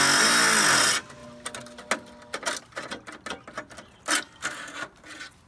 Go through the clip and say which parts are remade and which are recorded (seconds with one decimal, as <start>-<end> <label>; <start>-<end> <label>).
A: 0.0-5.5 recorded